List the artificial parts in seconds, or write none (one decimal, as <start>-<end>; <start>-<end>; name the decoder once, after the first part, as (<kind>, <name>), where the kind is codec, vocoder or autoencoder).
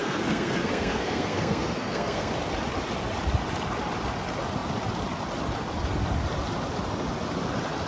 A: 0.0-2.3 (codec, SNAC)